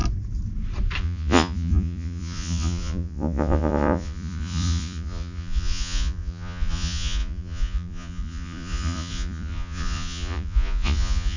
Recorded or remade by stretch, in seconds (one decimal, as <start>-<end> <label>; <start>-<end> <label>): 0.0-1.0 recorded; 1.0-11.4 remade